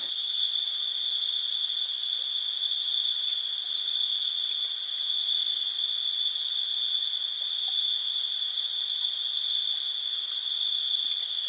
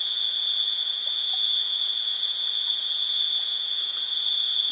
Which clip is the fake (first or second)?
second